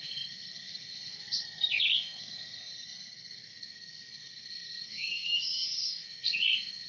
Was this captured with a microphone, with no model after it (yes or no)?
no